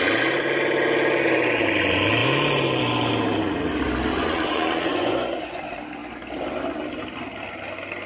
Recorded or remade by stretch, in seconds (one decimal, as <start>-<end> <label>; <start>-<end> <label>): 0.0-4.1 recorded; 4.1-5.6 remade; 5.6-8.1 recorded